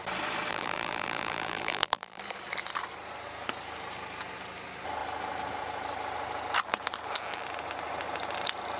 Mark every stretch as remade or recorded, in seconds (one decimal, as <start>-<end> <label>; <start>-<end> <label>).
0.0-0.5 recorded; 0.5-2.2 remade; 2.2-8.8 recorded